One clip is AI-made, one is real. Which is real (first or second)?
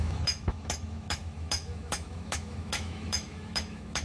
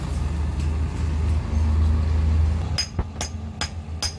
second